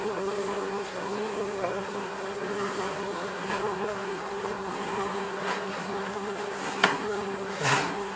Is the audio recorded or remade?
remade